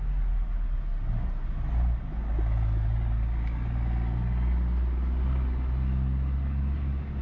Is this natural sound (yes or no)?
yes